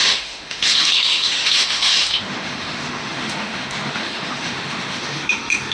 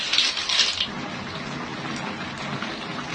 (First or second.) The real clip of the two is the second